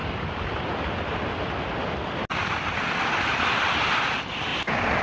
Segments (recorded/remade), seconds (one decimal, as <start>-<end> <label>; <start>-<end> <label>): 0.0-5.0 recorded